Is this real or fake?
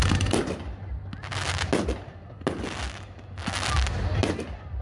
real